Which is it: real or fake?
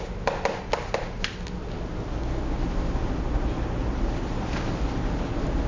real